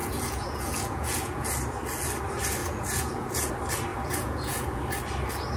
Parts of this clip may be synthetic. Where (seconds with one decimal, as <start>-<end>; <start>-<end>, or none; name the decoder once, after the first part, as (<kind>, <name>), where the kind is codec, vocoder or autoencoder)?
0.0-1.5 (vocoder, Vocos); 2.6-3.5; 3.9-4.8